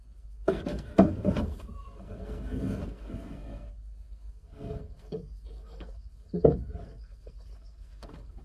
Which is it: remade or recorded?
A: remade